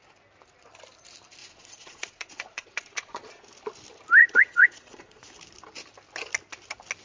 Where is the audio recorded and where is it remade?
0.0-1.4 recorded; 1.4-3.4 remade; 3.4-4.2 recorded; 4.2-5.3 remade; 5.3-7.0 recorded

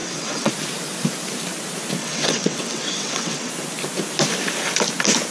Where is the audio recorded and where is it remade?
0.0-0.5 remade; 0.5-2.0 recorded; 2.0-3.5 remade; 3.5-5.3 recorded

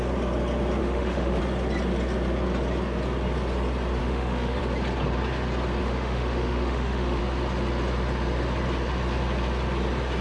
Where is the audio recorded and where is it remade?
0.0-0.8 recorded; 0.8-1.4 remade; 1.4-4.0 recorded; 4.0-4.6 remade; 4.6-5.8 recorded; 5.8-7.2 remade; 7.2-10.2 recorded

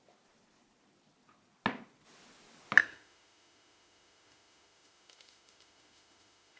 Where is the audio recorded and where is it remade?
0.0-2.8 recorded; 2.8-6.6 remade